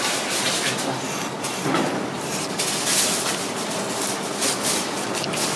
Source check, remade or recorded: recorded